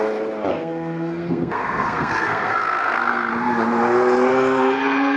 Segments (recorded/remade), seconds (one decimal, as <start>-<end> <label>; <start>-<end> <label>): 0.0-0.5 recorded; 0.5-3.3 remade; 3.3-4.3 recorded; 4.3-5.2 remade